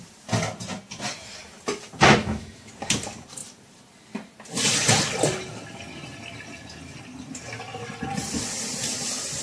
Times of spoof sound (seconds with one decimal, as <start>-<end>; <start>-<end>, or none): 2.2-2.7